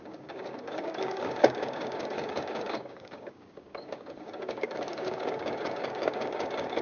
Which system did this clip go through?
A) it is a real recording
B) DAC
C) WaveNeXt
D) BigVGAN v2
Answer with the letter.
B